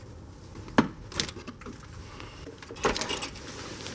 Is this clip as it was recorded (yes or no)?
yes